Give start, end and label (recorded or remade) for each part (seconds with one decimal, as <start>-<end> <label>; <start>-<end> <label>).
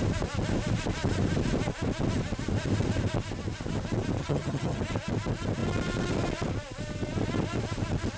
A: 0.0-4.2 recorded; 4.2-4.8 remade; 4.8-8.2 recorded